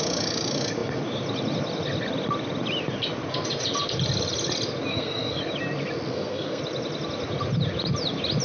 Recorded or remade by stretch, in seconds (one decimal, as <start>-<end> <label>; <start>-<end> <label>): 0.0-4.9 recorded; 4.9-5.4 remade; 5.4-6.1 recorded; 6.1-6.6 remade; 6.6-8.4 recorded